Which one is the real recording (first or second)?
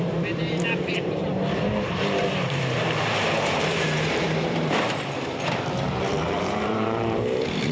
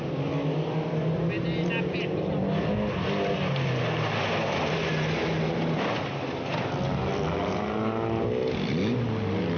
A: second